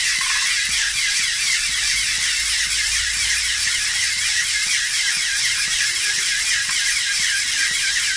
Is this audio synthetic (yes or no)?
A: yes